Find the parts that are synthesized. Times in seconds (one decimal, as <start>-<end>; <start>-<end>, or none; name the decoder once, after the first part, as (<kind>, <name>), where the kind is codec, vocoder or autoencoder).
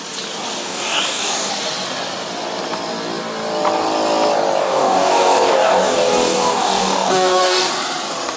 0.6-1.5 (codec, DAC); 4.6-7.7